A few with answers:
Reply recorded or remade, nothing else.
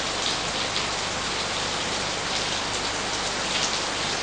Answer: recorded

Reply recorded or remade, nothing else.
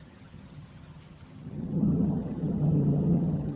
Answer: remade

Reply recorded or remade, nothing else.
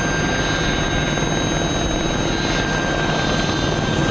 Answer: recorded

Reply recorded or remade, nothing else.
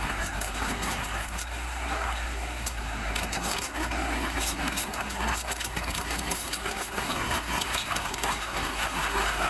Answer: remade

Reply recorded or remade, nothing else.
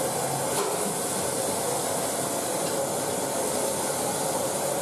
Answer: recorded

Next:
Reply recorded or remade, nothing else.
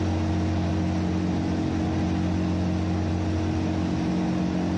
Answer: recorded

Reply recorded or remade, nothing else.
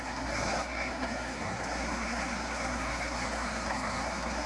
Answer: remade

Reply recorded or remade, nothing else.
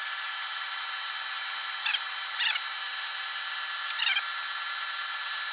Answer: recorded